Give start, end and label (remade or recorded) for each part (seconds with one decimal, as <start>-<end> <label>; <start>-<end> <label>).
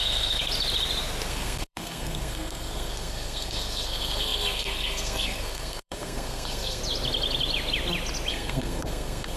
0.0-0.4 remade; 0.4-1.3 recorded; 1.3-6.8 remade; 6.8-8.3 recorded; 8.3-9.4 remade